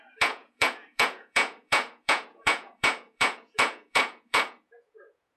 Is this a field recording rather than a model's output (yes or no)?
no